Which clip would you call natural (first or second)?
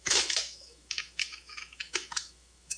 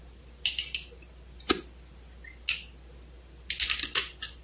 second